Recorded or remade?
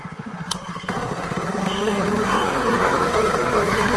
remade